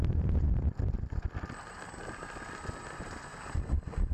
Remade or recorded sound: remade